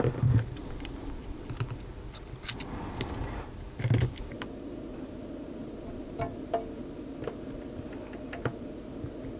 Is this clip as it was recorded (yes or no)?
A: yes